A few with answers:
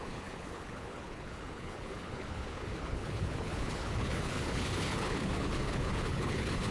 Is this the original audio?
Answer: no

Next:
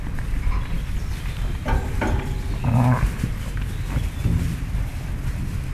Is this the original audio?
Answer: yes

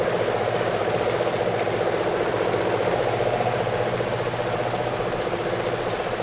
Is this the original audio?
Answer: yes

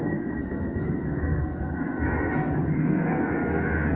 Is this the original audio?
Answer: no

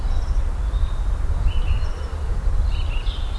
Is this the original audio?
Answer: yes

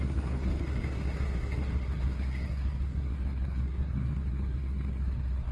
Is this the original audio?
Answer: no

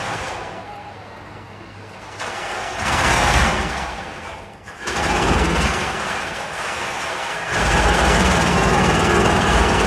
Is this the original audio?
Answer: no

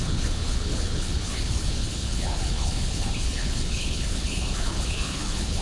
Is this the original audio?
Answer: no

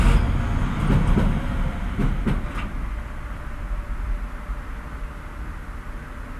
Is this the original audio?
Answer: yes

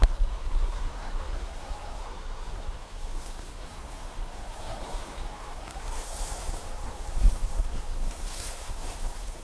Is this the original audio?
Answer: no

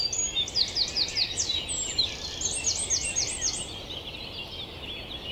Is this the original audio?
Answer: yes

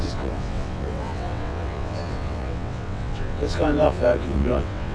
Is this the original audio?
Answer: no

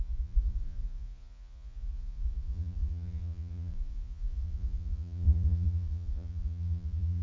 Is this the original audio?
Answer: no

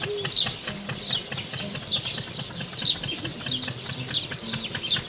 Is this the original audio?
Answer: yes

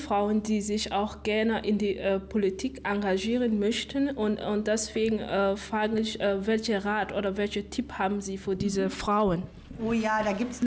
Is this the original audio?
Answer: yes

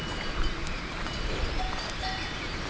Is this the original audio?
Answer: no